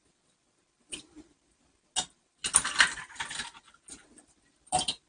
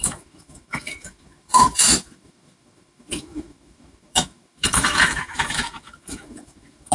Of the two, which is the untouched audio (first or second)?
first